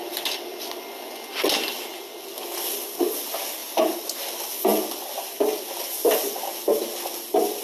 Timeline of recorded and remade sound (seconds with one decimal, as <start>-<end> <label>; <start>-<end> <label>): 0.0-3.6 recorded; 3.6-4.2 remade; 4.2-7.6 recorded